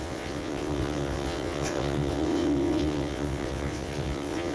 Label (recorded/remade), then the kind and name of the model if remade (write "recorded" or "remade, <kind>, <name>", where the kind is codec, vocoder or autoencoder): remade, vocoder, WaveNeXt